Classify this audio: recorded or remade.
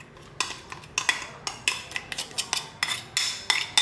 recorded